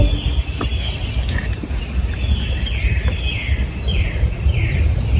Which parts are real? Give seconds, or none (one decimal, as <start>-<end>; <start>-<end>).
0.0-3.9; 4.8-5.2